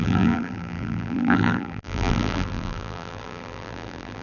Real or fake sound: fake